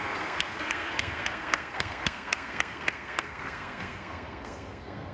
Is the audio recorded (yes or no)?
no